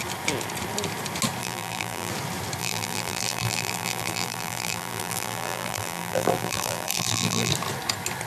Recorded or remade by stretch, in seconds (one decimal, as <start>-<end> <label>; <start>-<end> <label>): 0.0-1.4 recorded; 1.4-2.1 remade; 2.1-2.6 recorded; 2.6-7.5 remade; 7.5-8.3 recorded